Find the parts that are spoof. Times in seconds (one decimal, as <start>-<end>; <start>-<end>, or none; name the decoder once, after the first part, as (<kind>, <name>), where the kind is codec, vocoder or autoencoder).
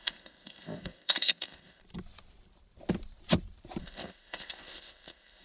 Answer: 0.0-1.8 (codec, ZipCodec); 3.8-5.4